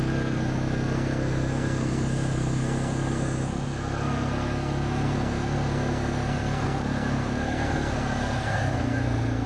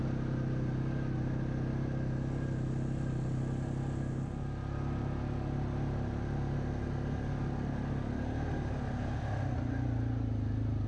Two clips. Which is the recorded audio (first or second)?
second